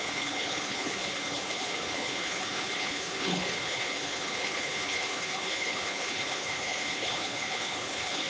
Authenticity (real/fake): fake